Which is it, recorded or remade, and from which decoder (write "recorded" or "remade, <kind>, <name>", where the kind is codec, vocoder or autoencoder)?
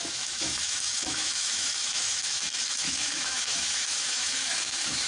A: remade, autoencoder, DAC-VAE